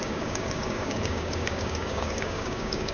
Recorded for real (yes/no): no